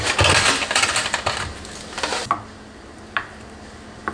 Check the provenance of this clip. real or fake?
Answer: real